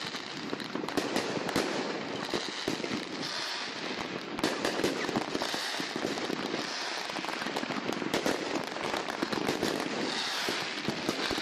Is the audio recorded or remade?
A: recorded